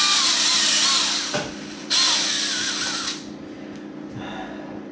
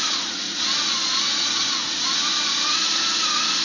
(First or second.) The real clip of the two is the first